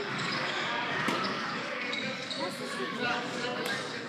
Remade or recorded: remade